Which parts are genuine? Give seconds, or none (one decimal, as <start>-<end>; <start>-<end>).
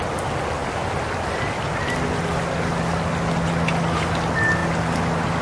0.0-5.4